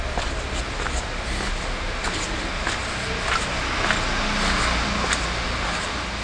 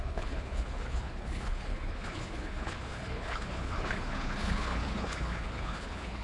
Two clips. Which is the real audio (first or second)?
first